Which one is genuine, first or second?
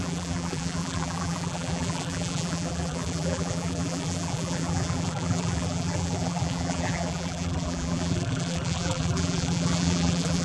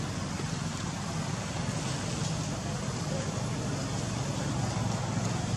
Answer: second